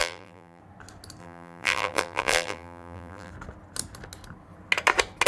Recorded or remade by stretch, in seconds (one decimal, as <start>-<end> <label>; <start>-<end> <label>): 0.0-0.6 remade; 0.6-1.2 recorded; 1.2-3.3 remade; 3.3-5.3 recorded